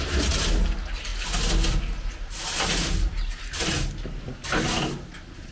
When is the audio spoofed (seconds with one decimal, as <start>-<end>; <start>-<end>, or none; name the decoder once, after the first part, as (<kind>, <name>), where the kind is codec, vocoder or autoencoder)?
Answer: none